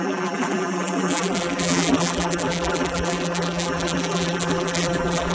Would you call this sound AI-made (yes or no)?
yes